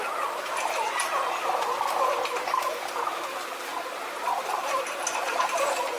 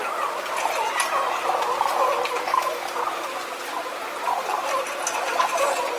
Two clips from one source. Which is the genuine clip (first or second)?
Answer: second